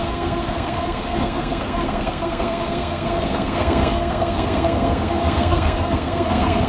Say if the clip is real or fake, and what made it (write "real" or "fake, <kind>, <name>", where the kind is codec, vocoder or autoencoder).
fake, codec, SNAC